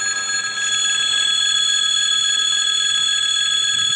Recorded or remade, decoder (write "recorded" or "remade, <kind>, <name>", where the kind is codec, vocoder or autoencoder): recorded